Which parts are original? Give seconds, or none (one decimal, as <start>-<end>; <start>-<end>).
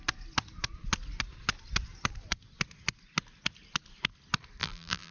0.0-4.6